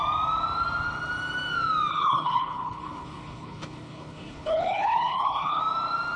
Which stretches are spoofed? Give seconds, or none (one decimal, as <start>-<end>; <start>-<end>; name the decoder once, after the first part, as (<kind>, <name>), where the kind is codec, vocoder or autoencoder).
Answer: 1.9-5.6 (codec, HILCodec)